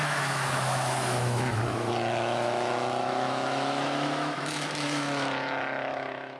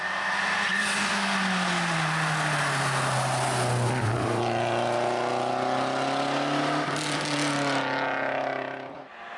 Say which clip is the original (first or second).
second